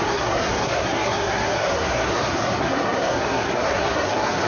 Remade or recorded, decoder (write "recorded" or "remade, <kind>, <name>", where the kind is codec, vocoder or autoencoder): remade, codec, SNAC